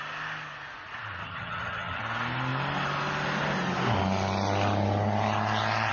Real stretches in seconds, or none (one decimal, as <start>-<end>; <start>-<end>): 0.0-1.2; 2.0-5.9